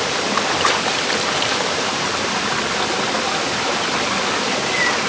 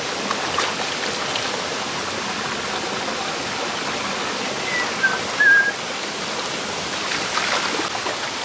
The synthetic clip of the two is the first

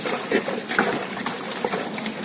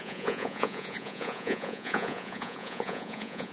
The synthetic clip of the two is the second